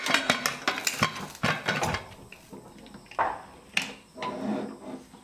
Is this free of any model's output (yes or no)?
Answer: yes